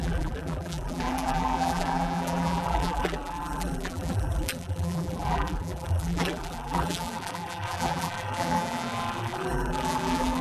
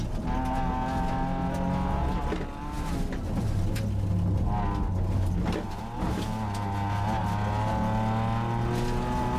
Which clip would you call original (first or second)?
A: second